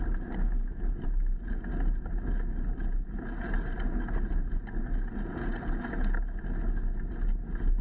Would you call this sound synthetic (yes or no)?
no